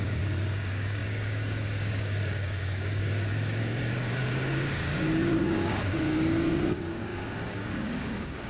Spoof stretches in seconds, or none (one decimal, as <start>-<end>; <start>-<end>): 0.0-8.5